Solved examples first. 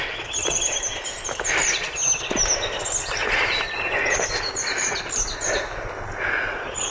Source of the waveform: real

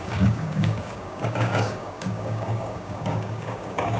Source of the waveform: fake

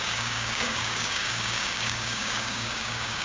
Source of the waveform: fake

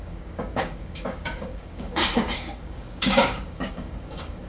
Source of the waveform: fake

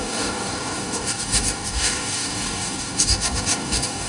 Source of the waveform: fake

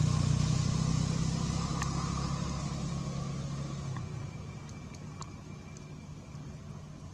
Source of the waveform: real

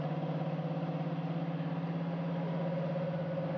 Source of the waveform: real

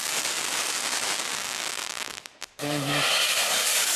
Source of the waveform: fake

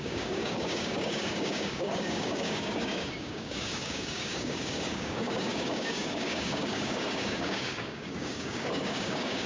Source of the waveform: fake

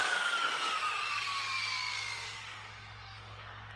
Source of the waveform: fake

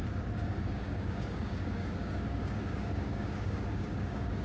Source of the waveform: fake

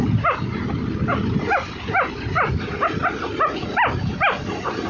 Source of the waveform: real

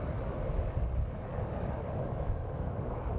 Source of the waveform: fake